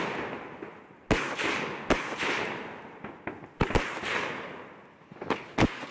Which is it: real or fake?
real